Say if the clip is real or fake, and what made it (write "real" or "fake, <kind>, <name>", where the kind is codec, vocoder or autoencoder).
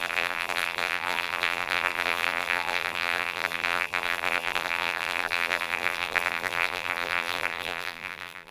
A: fake, vocoder, BigVGAN v2